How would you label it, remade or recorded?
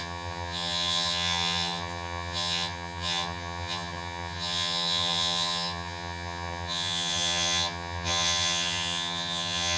remade